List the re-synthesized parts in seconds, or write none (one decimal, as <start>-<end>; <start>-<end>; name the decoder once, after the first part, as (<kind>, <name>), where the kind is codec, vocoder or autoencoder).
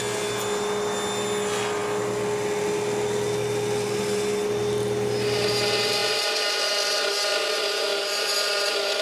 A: 6.0-6.7 (vocoder, BigVGAN v2)